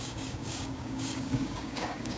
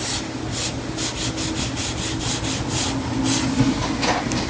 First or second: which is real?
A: second